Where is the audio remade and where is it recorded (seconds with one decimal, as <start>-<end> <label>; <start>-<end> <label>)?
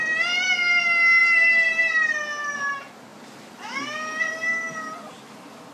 0.0-5.7 recorded